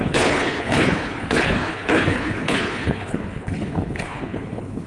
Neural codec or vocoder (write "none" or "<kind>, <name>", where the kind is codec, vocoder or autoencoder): codec, HILCodec